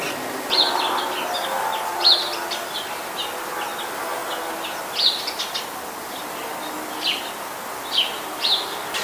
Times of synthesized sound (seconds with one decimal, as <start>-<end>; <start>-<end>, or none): none